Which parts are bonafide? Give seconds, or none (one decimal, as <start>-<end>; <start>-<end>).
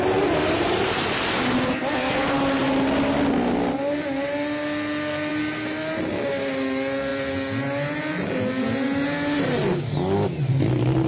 0.0-11.1